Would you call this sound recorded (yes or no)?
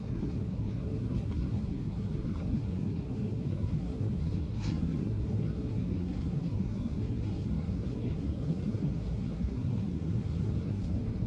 no